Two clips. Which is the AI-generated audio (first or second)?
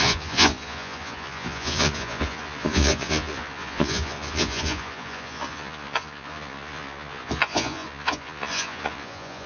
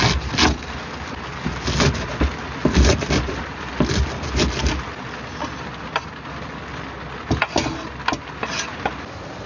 first